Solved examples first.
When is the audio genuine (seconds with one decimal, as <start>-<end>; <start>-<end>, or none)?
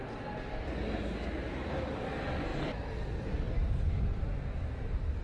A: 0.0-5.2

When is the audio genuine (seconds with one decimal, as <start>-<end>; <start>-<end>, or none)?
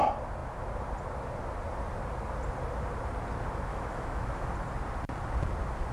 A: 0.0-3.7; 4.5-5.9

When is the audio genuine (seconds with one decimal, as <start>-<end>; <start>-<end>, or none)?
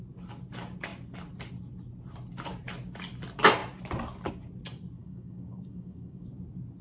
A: 0.0-5.0; 6.3-6.8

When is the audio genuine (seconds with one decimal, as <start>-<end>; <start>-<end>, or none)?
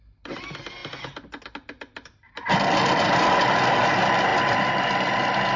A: 0.0-5.6